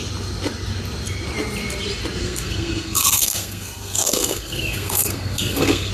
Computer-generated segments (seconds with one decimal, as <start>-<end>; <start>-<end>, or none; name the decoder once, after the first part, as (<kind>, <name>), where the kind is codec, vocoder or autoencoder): 2.2-5.9 (codec, SNAC)